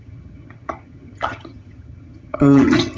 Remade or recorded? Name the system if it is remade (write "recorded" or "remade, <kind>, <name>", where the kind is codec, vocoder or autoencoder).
remade, vocoder, HiFi-GAN